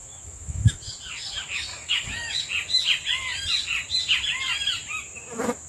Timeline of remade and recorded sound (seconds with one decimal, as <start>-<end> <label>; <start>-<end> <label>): 0.0-0.8 remade; 0.8-1.7 recorded; 1.7-2.4 remade; 2.4-5.7 recorded